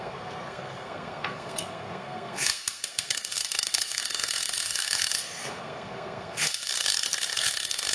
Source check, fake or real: fake